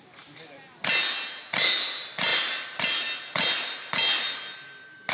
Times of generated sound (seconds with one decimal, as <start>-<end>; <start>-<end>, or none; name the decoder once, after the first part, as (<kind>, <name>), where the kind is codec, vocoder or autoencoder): none